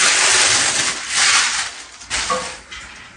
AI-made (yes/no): no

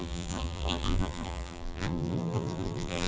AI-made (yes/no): yes